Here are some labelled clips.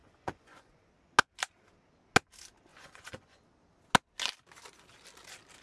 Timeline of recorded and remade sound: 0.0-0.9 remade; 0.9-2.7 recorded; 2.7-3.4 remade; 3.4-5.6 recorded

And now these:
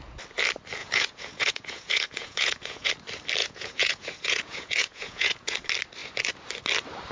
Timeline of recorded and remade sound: 0.0-0.8 recorded; 0.8-2.9 remade; 2.9-3.4 recorded; 3.4-5.6 remade; 5.6-7.1 recorded

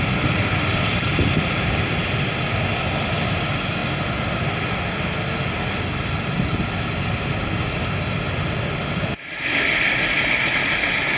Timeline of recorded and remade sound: 0.0-11.2 recorded

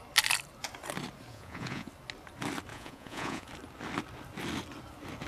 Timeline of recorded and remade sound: 0.0-1.3 recorded; 1.3-1.9 remade; 1.9-2.7 recorded; 2.7-3.5 remade; 3.5-5.3 recorded

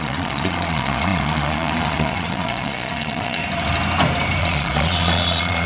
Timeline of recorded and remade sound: 0.0-3.4 remade; 3.4-4.4 recorded; 4.4-5.7 remade

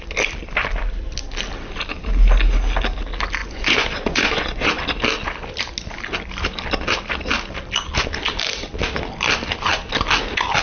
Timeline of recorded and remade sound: 0.0-3.4 recorded; 3.4-4.8 remade; 4.8-10.6 recorded

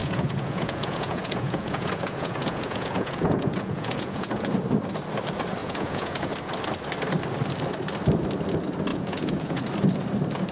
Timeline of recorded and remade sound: 0.0-4.5 remade; 4.5-5.6 recorded; 5.6-6.3 remade; 6.3-8.9 recorded; 8.9-9.6 remade; 9.6-10.5 recorded

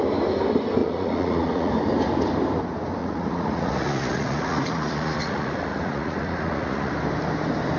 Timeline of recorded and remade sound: 0.0-0.8 recorded; 0.8-1.7 remade; 1.7-3.0 recorded; 3.0-6.9 remade; 6.9-7.8 recorded